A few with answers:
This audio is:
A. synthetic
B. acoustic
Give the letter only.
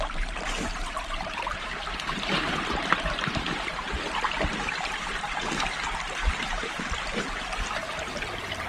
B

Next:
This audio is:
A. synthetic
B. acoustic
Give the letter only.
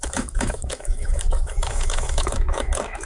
A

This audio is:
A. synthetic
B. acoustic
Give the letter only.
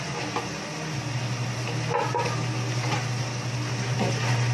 B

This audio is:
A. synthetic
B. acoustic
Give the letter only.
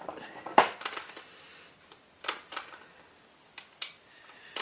B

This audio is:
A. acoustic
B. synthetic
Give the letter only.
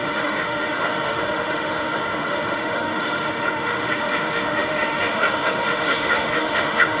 B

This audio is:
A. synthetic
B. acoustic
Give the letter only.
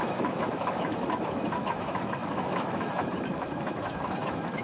A